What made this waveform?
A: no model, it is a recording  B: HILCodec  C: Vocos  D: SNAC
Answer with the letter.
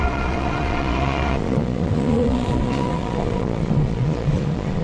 C